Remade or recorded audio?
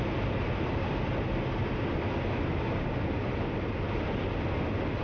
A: recorded